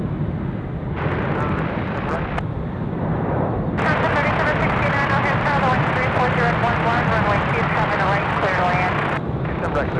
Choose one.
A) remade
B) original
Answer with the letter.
B